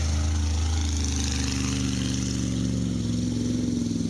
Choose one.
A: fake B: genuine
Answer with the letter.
B